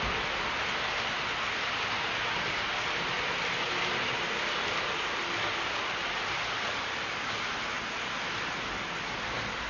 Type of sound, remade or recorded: recorded